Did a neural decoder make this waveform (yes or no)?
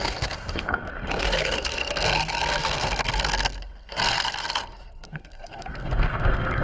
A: yes